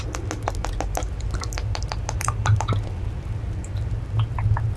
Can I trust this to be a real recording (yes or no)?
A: yes